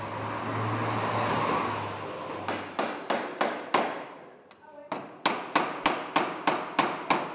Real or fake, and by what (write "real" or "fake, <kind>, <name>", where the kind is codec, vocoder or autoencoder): real